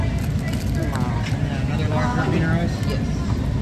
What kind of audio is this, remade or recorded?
recorded